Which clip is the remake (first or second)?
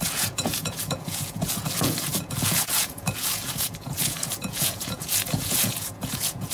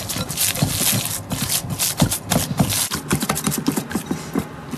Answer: first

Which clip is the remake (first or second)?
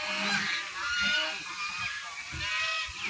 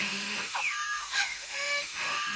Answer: second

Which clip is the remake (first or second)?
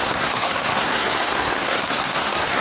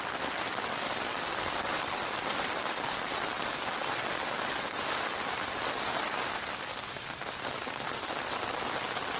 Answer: first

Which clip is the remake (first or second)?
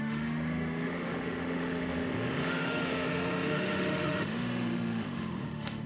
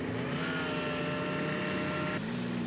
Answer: first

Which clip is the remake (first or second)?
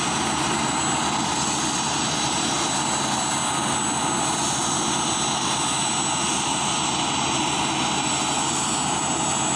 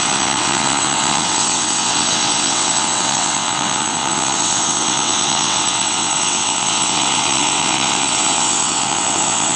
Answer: second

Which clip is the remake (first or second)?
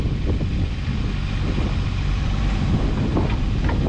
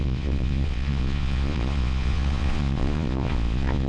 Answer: second